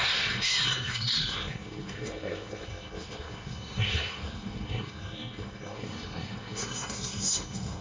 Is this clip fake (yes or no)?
yes